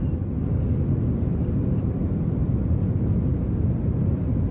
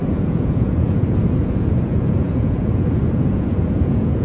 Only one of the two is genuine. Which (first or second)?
first